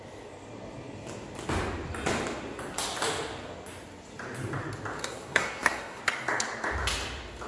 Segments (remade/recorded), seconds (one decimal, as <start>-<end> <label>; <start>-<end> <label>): 0.0-5.0 recorded; 5.0-6.0 remade; 6.0-7.5 recorded